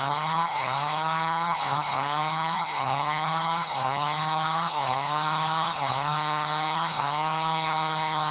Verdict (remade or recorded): remade